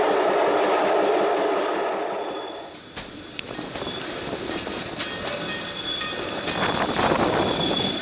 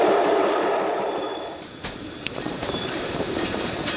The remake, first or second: second